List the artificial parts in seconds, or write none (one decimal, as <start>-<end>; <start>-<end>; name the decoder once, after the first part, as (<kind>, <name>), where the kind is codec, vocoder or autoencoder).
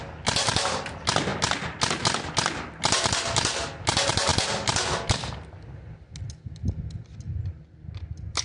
none